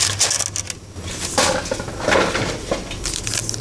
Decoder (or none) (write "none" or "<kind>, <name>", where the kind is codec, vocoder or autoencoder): none